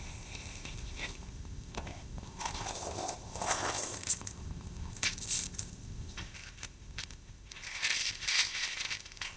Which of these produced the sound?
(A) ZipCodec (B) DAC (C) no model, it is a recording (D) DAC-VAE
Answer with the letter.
A